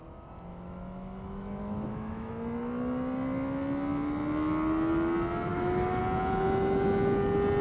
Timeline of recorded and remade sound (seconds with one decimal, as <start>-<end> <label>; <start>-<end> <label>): 0.0-0.5 recorded; 0.5-2.3 remade; 2.3-5.5 recorded; 5.5-6.0 remade; 6.0-7.6 recorded